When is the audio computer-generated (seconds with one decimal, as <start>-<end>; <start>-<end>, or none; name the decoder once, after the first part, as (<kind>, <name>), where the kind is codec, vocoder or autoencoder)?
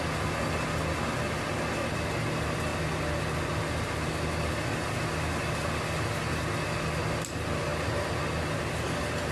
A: none